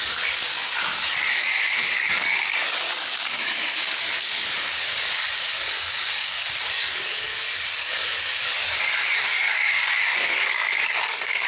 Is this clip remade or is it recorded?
remade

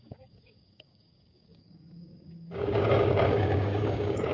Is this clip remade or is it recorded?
remade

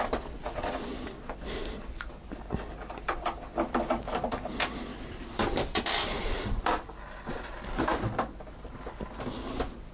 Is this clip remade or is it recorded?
recorded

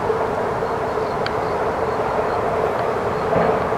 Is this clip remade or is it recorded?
recorded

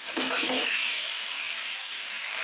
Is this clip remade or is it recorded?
remade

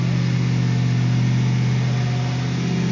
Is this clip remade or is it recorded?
recorded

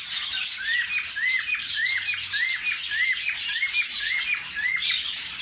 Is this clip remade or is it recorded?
recorded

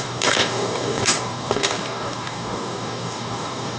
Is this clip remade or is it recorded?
remade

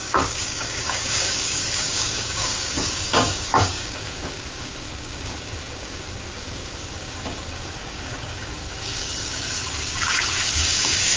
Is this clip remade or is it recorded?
remade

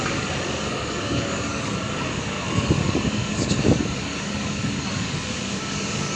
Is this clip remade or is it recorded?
remade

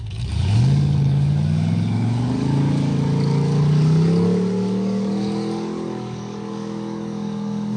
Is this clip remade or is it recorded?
remade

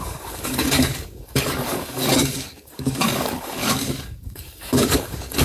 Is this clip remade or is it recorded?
remade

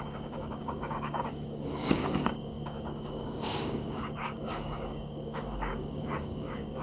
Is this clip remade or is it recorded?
remade